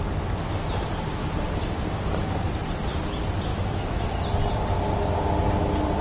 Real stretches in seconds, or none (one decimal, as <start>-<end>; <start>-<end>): 0.0-3.5; 4.0-6.0